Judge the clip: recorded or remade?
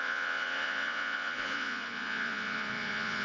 remade